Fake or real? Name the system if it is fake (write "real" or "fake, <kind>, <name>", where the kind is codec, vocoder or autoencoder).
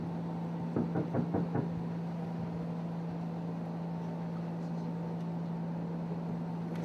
real